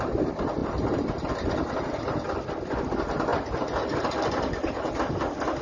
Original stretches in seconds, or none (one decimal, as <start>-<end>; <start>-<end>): 0.0-5.6